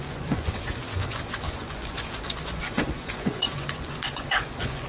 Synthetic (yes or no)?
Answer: yes